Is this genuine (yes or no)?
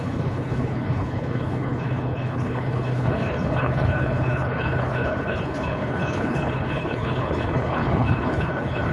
no